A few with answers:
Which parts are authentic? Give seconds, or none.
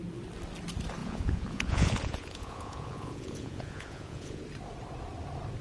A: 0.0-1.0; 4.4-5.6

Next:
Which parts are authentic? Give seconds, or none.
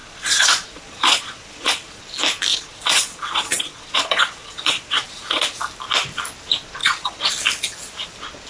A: 2.0-2.5; 5.6-6.8; 7.3-8.5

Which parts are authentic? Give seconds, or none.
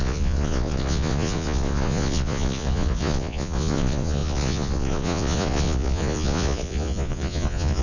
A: none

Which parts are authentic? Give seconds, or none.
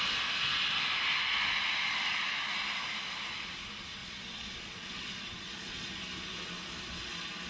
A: 0.0-4.0; 5.9-7.5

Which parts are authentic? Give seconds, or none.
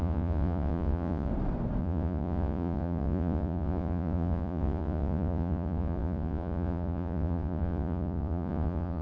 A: 1.3-1.8